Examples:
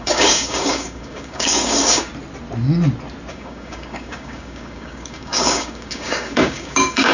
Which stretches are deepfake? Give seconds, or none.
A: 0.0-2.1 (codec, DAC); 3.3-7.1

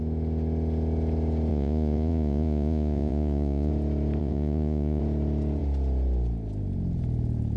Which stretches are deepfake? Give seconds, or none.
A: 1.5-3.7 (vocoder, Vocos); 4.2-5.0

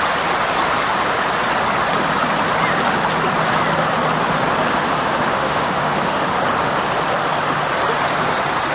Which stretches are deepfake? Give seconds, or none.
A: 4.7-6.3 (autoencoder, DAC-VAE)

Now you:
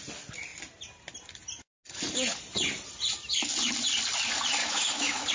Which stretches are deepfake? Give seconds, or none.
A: 4.6-5.3 (autoencoder, DAC-VAE)

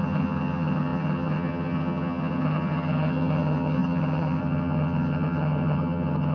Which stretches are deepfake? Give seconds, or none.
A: 0.0-6.3 (vocoder, HiFi-GAN)

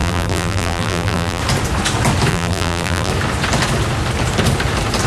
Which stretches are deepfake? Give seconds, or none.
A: 0.0-1.4 (vocoder, BigVGAN v2); 2.3-3.1

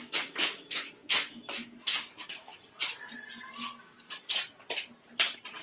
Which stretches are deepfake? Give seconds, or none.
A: 0.0-2.5 (autoencoder, DAC-VAE)